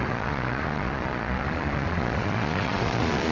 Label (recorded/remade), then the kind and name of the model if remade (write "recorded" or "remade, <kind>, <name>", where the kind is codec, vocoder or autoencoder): remade, vocoder, Vocos